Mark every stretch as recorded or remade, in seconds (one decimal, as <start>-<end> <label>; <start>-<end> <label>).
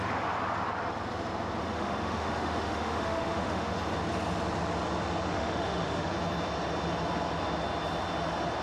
0.0-1.6 recorded; 1.6-3.8 remade; 3.8-5.3 recorded; 5.3-6.1 remade; 6.1-8.6 recorded